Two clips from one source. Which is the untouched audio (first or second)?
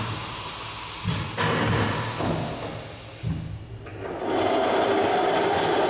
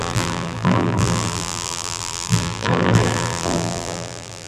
first